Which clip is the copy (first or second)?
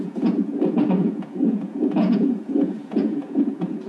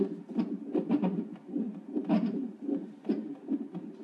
first